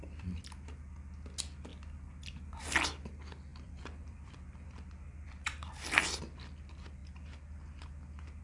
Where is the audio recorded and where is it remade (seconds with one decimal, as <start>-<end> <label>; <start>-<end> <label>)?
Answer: 0.0-3.5 recorded; 3.5-6.2 remade; 6.2-8.4 recorded